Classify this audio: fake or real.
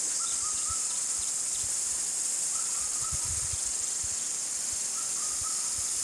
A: real